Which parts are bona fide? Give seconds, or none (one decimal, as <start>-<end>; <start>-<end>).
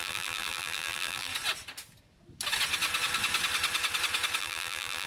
1.3-4.4